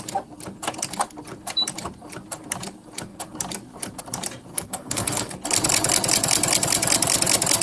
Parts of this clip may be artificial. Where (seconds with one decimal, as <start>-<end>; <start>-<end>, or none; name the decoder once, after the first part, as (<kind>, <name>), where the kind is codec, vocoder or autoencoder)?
4.5-5.3 (codec, SNAC)